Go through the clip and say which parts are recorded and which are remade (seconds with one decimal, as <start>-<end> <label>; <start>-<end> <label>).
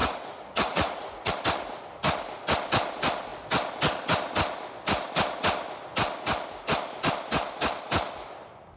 0.0-1.3 remade; 1.3-8.8 recorded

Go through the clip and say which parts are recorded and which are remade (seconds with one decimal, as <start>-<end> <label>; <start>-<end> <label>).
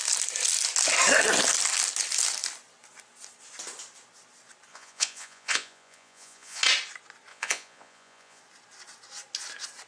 0.0-4.7 recorded; 4.7-6.6 remade; 6.6-7.3 recorded; 7.3-8.4 remade; 8.4-9.9 recorded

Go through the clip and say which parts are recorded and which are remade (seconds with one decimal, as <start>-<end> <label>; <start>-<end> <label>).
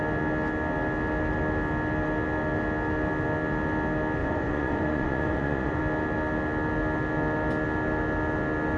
0.0-4.2 recorded; 4.2-5.8 remade; 5.8-8.8 recorded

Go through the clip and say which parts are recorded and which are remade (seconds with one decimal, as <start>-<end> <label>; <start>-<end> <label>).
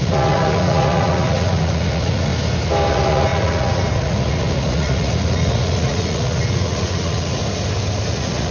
0.0-2.3 remade; 2.3-2.9 recorded; 2.9-7.4 remade; 7.4-8.1 recorded; 8.1-8.5 remade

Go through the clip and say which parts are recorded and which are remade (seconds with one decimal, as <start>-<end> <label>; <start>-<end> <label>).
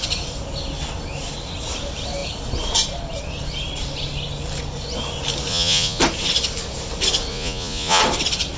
0.0-5.5 recorded; 5.5-6.0 remade; 6.0-7.3 recorded; 7.3-8.0 remade; 8.0-8.6 recorded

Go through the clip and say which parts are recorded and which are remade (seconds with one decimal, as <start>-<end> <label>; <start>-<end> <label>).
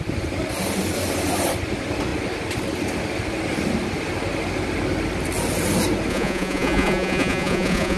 0.0-6.1 recorded; 6.1-8.0 remade